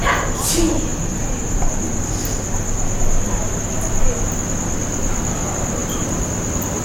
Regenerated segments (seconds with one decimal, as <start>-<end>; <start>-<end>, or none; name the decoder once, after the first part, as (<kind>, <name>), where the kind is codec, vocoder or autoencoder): none